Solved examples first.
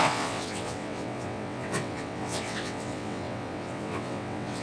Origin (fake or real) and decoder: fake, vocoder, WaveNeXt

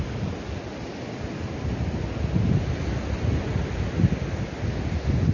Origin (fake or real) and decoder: real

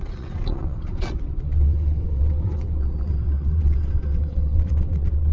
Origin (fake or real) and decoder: fake, vocoder, WaveNeXt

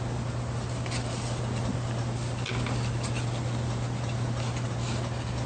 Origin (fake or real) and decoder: real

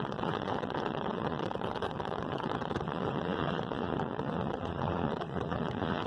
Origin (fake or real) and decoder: fake, vocoder, WaveNeXt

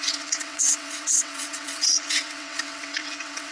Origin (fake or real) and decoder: fake, vocoder, WaveNeXt